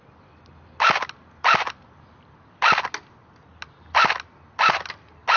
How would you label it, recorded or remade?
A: recorded